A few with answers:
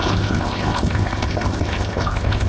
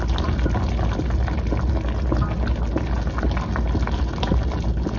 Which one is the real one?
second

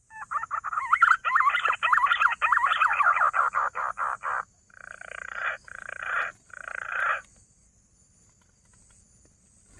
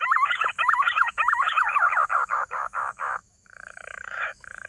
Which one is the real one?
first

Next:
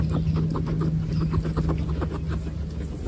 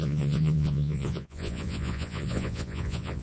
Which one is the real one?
first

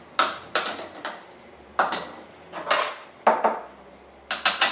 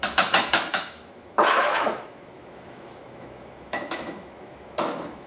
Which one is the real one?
first